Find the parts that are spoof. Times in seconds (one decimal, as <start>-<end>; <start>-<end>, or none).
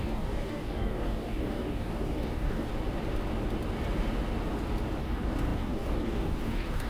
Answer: 0.0-2.7; 5.0-6.9